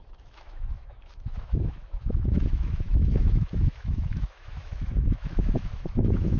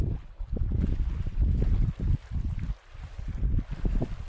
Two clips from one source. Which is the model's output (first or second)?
first